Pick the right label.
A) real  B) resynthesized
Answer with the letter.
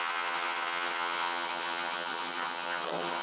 B